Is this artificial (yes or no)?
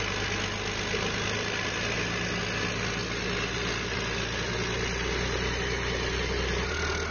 no